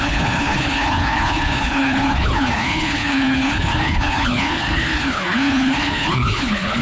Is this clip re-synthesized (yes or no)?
yes